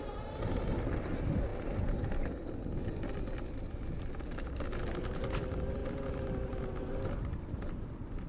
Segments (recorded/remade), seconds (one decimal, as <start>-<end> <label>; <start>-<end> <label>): 0.0-8.3 recorded